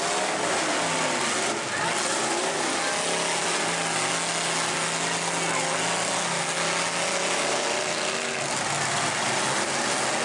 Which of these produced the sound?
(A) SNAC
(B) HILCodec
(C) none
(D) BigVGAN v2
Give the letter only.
C